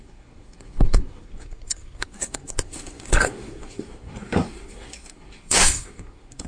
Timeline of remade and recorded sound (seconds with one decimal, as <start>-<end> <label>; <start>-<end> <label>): 0.0-6.5 remade